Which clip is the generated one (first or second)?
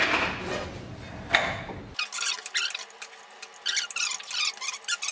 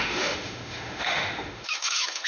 second